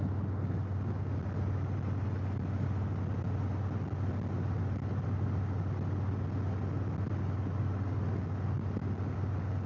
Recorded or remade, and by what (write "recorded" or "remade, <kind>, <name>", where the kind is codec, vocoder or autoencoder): recorded